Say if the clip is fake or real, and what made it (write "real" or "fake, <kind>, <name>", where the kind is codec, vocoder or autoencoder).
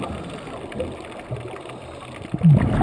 real